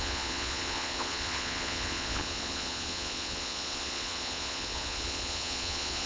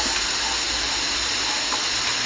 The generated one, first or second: first